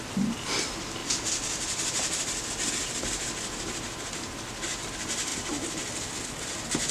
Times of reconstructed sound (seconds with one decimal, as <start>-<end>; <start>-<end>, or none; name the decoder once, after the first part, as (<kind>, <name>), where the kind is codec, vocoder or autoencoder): none